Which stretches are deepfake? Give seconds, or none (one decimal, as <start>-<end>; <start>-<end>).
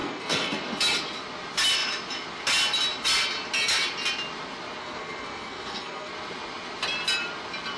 0.0-0.6; 4.8-6.1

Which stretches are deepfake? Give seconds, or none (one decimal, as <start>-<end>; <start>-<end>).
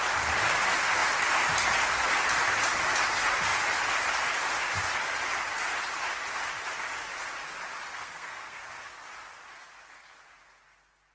7.9-8.6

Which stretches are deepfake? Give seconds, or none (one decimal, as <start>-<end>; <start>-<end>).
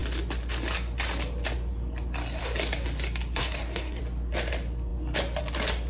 3.4-4.0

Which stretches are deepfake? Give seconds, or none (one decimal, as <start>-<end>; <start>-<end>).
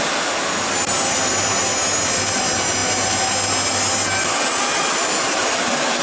none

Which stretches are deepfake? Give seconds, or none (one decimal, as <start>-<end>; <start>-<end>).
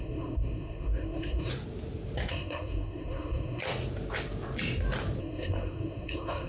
0.0-1.5; 2.3-3.6; 5.2-6.5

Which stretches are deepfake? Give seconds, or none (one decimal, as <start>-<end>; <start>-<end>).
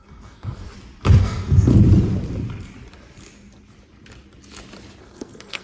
0.0-0.7; 1.2-1.7; 5.0-5.6